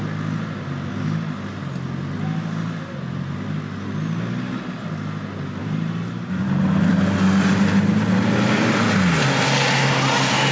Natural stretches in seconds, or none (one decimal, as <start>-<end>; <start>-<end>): 0.0-5.6; 7.0-10.5